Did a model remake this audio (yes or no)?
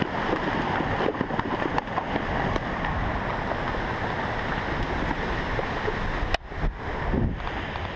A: no